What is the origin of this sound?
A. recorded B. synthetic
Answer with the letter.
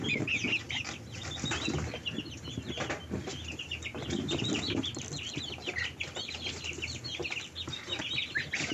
A